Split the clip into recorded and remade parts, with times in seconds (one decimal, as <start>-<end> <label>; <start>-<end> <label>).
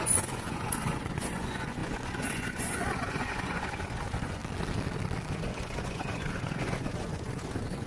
0.0-4.4 remade; 4.4-5.3 recorded; 5.3-7.9 remade